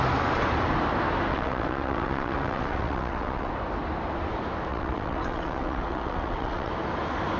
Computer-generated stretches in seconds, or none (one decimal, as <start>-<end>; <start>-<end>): 1.3-3.5; 4.7-6.7